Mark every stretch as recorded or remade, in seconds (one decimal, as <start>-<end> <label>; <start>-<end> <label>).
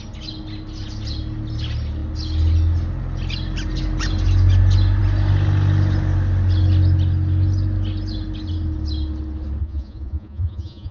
0.0-9.6 recorded; 9.6-10.9 remade